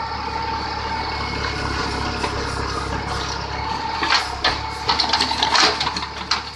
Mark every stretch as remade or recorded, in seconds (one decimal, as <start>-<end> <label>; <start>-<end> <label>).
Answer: 0.0-6.6 recorded